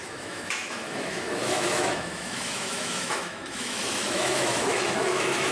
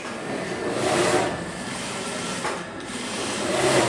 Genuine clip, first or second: second